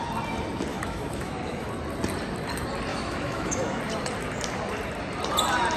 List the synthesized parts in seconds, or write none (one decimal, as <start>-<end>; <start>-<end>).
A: 0.7-1.7; 2.9-3.8